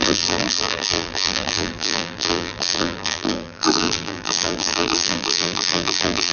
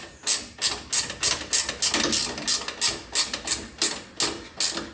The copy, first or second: first